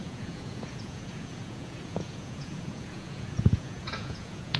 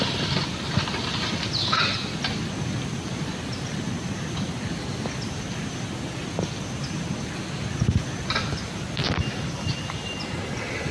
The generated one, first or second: first